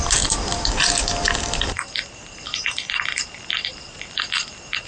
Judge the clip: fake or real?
real